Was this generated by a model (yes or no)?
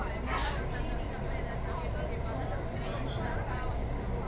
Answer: no